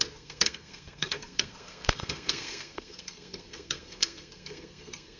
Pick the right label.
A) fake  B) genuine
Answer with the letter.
A